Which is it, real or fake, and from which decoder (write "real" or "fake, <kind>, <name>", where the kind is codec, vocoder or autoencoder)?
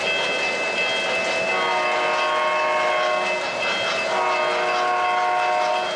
real